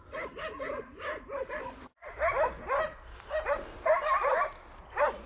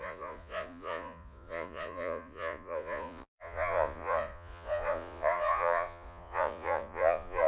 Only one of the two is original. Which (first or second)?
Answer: first